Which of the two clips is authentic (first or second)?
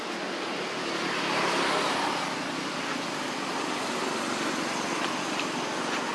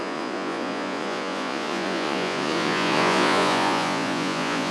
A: first